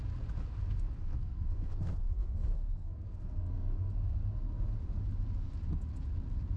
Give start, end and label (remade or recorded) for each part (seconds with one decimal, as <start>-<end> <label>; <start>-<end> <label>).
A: 0.0-0.6 recorded; 0.6-3.9 remade; 3.9-6.6 recorded